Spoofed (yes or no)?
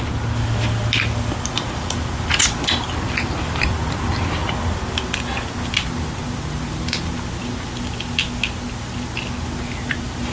no